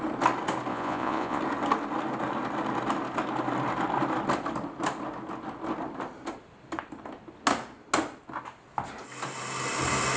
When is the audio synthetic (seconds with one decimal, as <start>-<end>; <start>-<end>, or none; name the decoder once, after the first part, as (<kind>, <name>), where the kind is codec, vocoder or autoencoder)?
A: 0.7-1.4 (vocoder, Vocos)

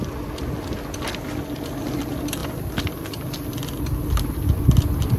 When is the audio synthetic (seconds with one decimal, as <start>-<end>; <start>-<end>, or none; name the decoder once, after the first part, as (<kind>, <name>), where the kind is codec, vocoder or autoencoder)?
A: none

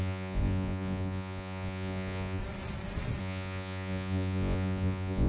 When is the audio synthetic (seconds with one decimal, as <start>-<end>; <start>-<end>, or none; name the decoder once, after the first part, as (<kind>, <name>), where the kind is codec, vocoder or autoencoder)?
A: 0.0-2.4 (vocoder, Vocos); 3.2-5.3

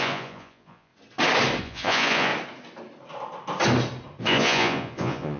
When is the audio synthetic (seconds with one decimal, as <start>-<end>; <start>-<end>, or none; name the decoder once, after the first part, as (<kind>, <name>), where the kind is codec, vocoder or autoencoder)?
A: 0.0-0.9 (vocoder, Vocos); 1.6-2.3; 4.2-5.4

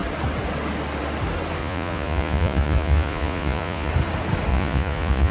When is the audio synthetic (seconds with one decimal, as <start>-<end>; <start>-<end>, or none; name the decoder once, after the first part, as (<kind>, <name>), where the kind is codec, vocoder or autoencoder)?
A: 1.6-3.9 (vocoder, Vocos); 4.5-5.3